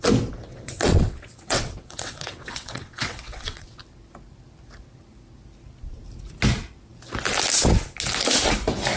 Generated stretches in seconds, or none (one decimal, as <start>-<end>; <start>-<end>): 0.5-3.8